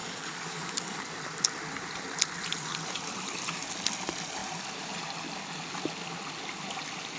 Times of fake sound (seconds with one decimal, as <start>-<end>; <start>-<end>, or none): 0.0-1.0